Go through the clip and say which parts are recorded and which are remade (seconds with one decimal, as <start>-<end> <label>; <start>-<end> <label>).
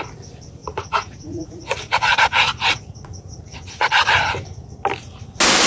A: 0.0-0.6 recorded; 0.6-3.9 remade; 3.9-5.7 recorded